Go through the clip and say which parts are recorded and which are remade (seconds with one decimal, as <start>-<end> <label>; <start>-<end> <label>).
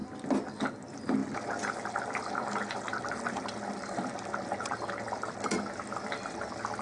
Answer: 0.0-6.8 recorded